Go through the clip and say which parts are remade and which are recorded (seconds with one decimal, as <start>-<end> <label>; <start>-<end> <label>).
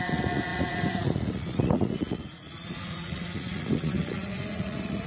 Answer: 0.0-5.1 remade